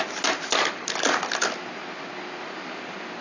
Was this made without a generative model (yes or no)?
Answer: yes